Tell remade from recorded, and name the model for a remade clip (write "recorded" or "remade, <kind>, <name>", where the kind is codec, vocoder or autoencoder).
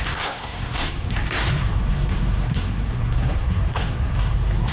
remade, codec, SNAC